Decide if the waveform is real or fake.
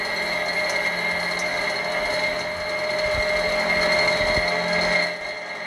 real